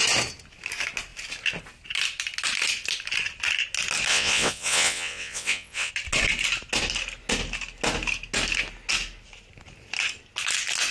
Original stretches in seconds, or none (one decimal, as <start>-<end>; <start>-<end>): 0.0-4.1; 5.9-10.9